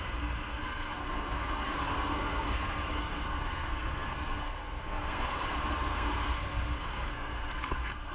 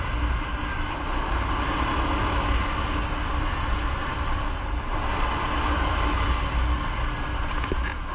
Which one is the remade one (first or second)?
first